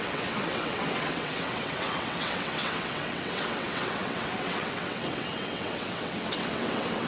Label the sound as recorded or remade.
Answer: remade